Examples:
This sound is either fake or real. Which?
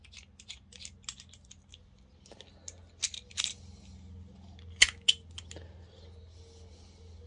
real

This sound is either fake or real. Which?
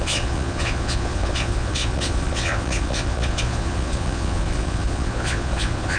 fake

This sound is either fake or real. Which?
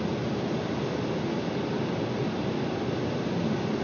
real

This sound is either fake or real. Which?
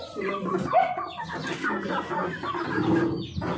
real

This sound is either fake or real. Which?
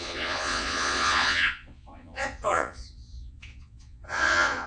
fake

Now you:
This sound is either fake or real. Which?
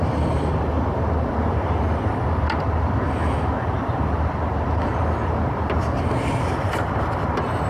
real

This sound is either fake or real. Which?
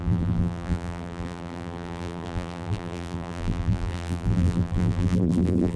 fake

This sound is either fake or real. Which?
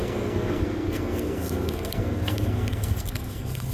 fake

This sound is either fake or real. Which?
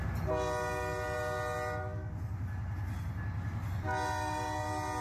real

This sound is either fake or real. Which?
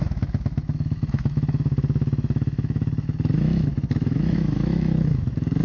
fake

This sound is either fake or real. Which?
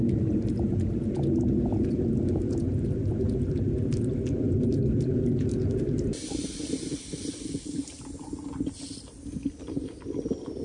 real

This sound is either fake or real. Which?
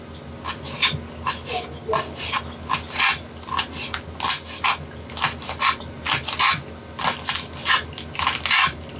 real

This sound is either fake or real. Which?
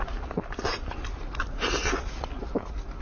real